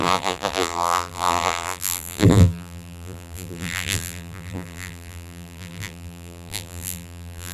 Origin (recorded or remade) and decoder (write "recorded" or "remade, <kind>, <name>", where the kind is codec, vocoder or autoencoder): remade, vocoder, BigVGAN v2